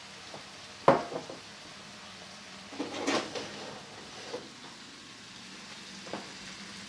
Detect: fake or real real